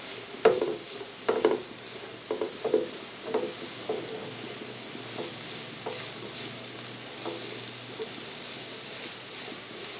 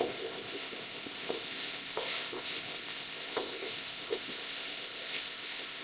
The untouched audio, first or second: first